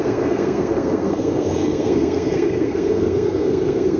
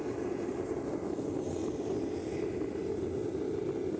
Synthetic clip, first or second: first